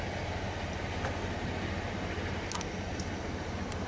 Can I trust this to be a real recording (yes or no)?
yes